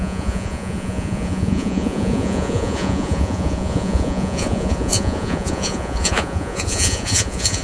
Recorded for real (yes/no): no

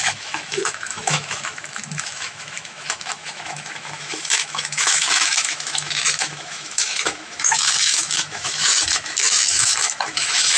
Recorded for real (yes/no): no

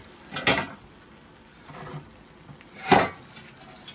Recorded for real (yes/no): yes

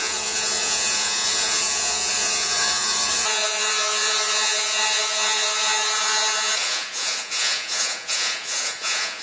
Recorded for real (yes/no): no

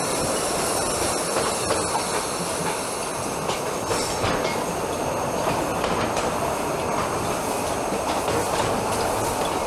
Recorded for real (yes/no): yes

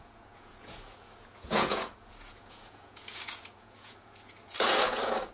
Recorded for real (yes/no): no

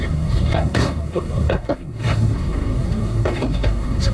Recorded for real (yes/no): no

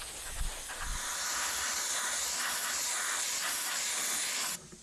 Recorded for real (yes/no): yes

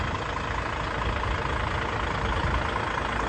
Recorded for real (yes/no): yes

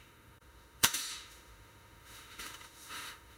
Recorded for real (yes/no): no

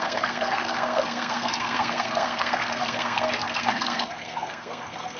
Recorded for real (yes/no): no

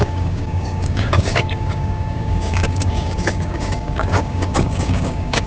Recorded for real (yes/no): no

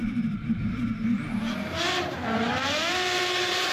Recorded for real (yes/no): no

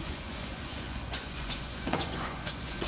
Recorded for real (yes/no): no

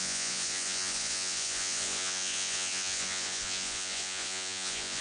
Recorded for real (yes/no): no